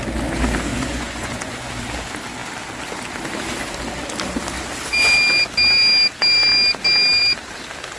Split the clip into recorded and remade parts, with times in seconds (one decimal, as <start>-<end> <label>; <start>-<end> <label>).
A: 0.0-0.7 recorded; 0.7-1.7 remade; 1.7-8.0 recorded